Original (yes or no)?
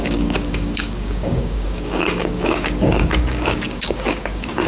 no